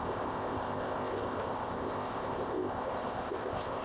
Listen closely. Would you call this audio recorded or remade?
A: remade